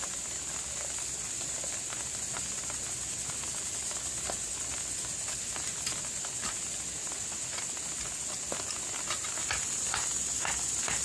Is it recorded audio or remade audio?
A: recorded